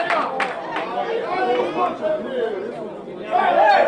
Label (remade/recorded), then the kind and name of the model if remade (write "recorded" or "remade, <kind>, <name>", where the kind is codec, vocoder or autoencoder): recorded